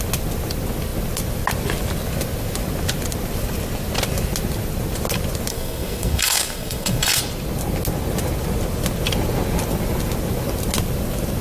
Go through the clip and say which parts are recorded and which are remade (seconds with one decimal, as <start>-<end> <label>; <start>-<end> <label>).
0.0-5.5 recorded; 5.5-7.2 remade; 7.2-11.4 recorded